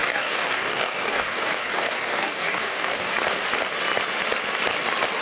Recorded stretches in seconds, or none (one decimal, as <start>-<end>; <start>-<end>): 3.1-5.2